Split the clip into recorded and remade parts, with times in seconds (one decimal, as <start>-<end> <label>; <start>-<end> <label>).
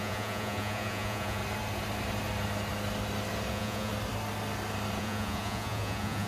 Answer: 0.0-1.4 remade; 1.4-3.5 recorded; 3.5-3.9 remade; 3.9-5.0 recorded; 5.0-6.3 remade